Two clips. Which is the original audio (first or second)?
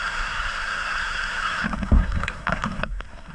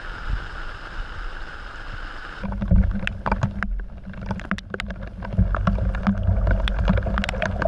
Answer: second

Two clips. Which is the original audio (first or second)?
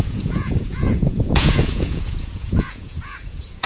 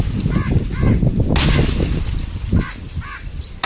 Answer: second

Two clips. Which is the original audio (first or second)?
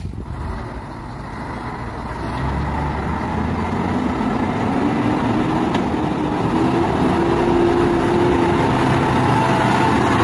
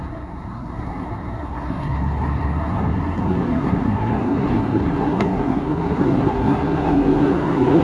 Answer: first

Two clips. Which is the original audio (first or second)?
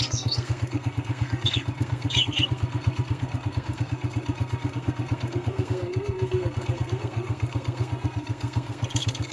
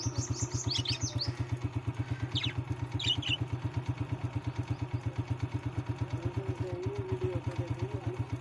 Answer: second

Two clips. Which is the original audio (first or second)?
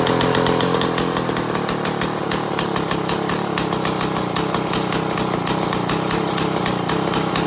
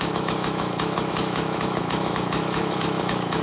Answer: first